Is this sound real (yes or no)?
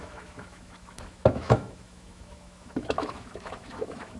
no